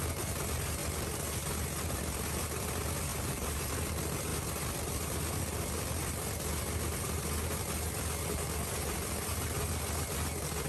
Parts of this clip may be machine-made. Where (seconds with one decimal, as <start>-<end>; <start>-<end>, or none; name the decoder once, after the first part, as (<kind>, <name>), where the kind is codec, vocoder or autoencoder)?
3.1-3.7 (vocoder, BigVGAN v2)